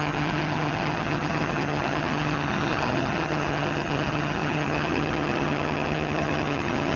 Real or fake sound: fake